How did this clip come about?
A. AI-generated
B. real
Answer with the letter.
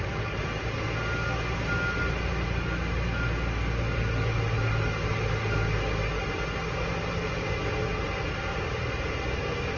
B